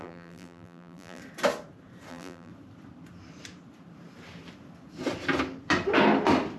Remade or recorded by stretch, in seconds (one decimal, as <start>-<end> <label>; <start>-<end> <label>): 0.0-1.2 remade; 1.2-2.1 recorded; 2.1-2.5 remade; 2.5-6.6 recorded